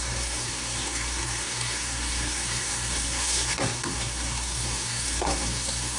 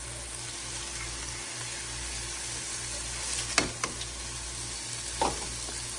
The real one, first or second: second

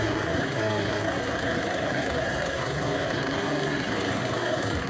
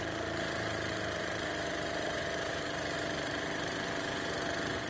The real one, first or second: second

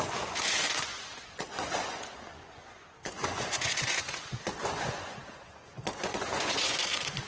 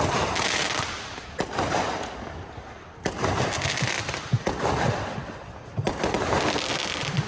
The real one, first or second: second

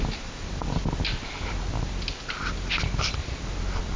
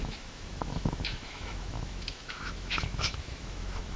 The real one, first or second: first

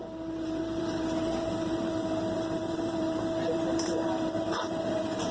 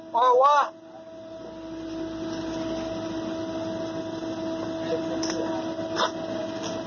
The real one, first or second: second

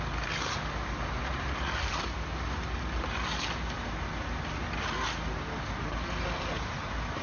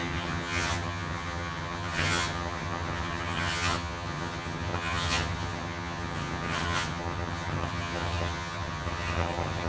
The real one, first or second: first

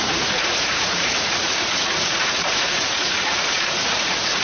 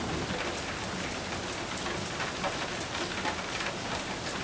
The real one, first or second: second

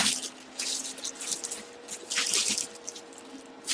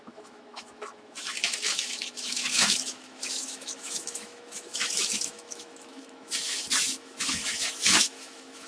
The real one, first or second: first